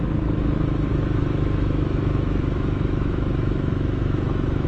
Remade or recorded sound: remade